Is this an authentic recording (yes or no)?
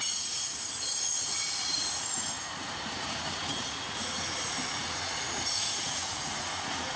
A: no